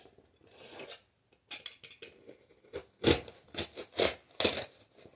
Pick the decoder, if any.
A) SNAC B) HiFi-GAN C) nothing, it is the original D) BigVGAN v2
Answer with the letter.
C